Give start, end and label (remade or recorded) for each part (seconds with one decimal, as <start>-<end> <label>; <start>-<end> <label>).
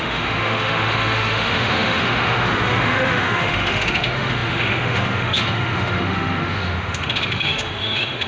0.0-8.3 remade